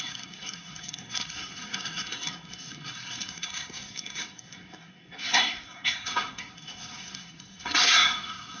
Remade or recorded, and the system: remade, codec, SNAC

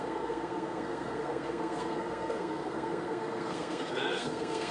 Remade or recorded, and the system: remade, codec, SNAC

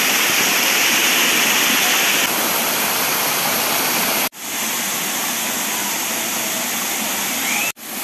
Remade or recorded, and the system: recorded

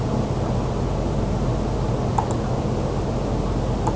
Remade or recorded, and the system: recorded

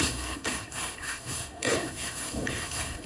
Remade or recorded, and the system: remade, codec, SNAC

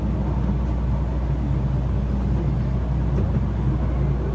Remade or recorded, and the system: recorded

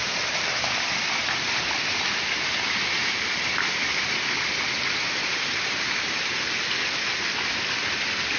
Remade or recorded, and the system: recorded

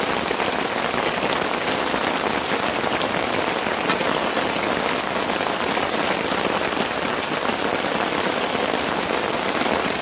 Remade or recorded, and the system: recorded